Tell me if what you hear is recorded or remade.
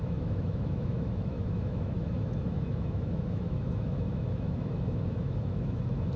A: remade